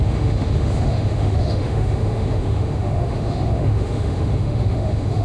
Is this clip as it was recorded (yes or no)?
no